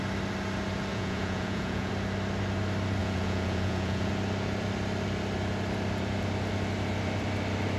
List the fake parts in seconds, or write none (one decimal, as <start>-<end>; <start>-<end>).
0.9-1.9; 3.0-4.1